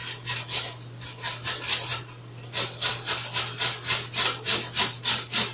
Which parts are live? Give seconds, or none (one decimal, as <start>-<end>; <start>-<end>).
0.0-5.5